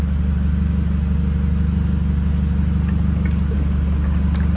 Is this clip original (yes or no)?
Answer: yes